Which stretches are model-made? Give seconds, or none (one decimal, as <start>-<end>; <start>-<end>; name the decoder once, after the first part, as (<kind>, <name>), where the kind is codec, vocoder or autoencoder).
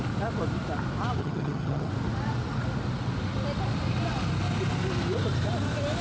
1.2-1.9 (vocoder, HiFi-GAN)